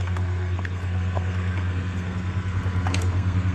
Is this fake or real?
fake